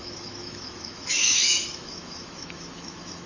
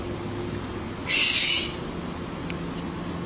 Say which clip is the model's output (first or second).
first